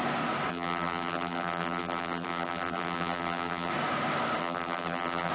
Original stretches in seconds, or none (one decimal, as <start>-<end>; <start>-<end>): 0.0-0.5; 3.7-4.4